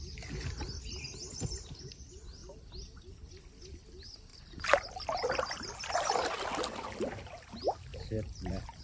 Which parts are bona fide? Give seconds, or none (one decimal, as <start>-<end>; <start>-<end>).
0.0-7.9